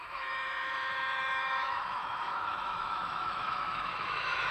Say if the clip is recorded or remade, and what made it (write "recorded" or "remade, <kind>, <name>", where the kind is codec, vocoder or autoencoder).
remade, autoencoder, DAC-VAE